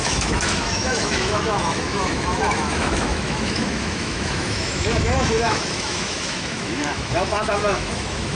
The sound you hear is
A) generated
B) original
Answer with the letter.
A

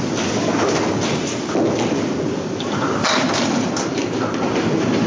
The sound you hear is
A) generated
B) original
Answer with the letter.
B